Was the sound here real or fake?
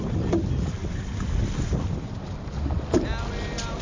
real